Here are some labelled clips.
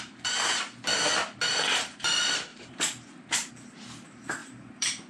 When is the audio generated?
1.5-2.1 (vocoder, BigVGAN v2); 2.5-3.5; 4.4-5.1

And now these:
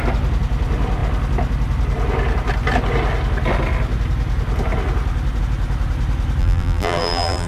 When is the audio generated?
6.4-7.5 (vocoder, BigVGAN v2)

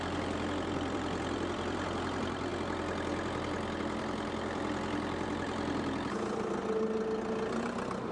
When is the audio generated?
0.0-2.5 (vocoder, BigVGAN v2); 3.8-6.6

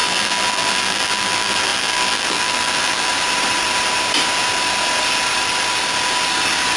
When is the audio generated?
0.0-3.1 (vocoder, BigVGAN v2)

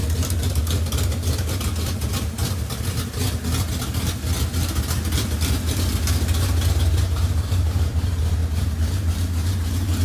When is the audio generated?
1.1-2.4 (vocoder, BigVGAN v2); 7.0-10.0

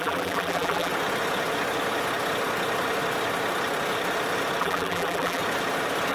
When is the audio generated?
0.0-0.9 (vocoder, BigVGAN v2); 4.6-5.4